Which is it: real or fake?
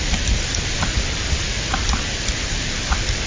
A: real